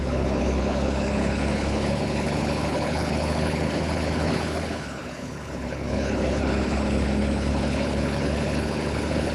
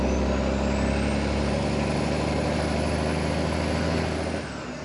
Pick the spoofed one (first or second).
first